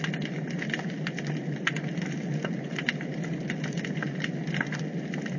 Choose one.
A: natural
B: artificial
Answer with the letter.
A